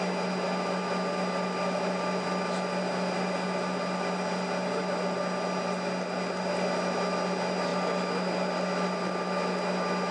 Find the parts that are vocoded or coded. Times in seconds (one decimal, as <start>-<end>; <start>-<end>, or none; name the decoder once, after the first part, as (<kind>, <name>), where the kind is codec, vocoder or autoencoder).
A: none